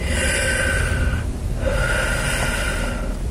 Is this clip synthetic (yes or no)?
no